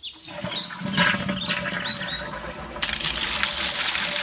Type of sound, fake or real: real